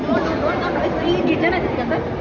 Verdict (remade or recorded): recorded